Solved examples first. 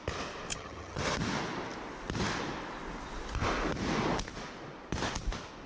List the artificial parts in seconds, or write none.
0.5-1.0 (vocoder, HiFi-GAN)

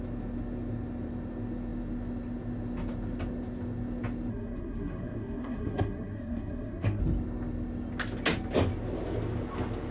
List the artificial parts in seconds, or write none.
4.3-7.0 (codec, SNAC)